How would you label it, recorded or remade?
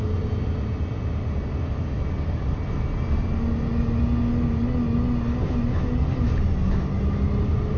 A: recorded